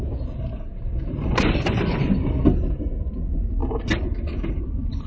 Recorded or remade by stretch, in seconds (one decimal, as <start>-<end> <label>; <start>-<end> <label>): 0.0-3.6 remade; 3.6-4.5 recorded; 4.5-5.1 remade